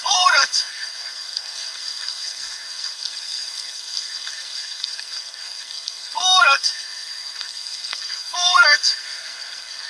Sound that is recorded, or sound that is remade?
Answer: remade